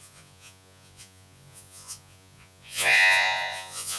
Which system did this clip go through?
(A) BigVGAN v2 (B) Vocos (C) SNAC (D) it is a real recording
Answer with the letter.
B